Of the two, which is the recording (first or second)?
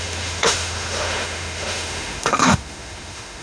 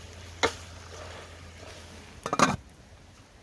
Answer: second